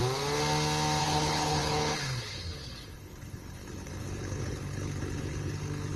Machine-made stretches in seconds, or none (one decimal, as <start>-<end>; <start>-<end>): 1.0-6.0